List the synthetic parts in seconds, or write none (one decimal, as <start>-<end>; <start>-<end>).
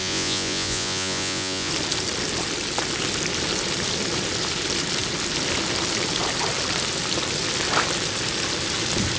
0.0-1.7